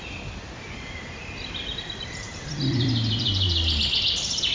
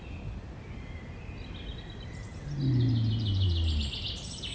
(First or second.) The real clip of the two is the second